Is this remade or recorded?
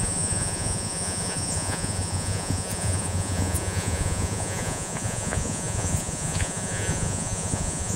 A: remade